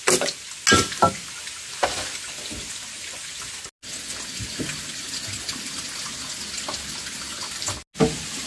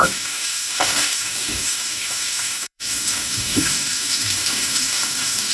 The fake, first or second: second